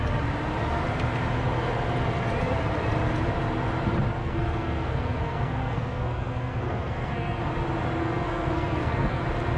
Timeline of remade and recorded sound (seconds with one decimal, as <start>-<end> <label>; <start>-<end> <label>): 0.0-4.2 recorded; 4.2-7.4 remade; 7.4-8.0 recorded; 8.0-9.2 remade; 9.2-9.6 recorded